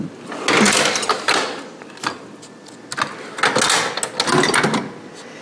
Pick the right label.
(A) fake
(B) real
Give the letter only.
B